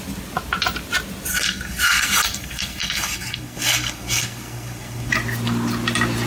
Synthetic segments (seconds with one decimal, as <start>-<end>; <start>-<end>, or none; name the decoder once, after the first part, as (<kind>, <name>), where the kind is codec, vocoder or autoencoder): 1.3-5.1 (codec, SNAC)